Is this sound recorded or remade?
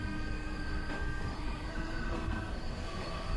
remade